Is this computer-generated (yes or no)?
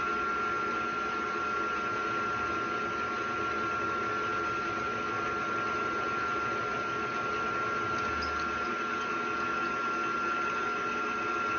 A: no